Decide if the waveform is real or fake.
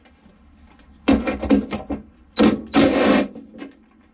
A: real